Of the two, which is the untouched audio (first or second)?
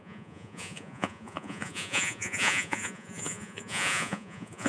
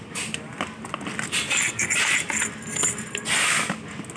second